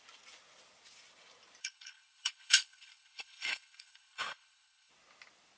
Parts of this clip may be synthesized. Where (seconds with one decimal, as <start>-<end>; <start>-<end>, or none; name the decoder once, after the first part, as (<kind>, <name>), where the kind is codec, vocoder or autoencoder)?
1.6-4.9 (codec, HILCodec)